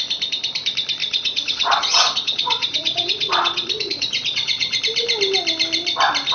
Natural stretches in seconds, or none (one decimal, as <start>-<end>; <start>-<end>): 0.0-1.0; 4.8-6.3